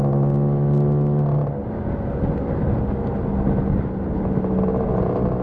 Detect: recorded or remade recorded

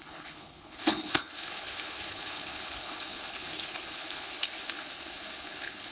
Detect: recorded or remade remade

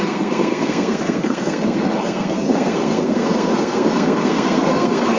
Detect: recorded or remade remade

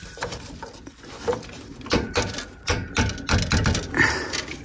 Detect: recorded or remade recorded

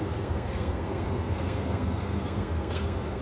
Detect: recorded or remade remade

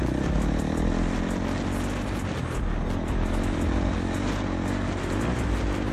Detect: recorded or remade recorded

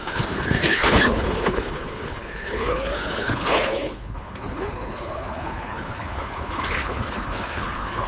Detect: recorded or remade remade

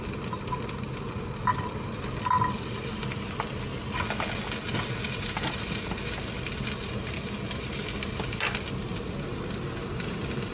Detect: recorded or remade recorded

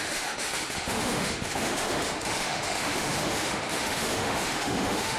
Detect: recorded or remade remade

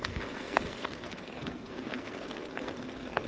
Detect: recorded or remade remade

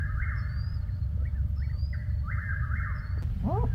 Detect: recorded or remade recorded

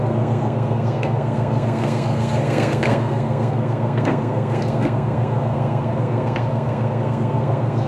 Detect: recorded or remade remade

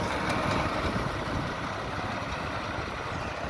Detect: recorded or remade recorded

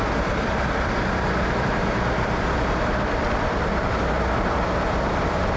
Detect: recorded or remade remade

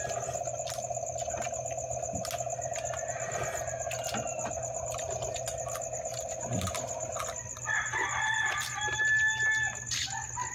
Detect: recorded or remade recorded